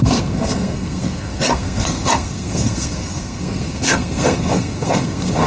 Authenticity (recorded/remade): remade